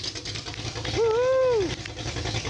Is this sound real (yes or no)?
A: yes